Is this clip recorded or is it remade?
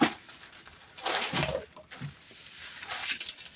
recorded